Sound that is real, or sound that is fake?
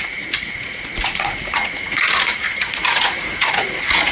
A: fake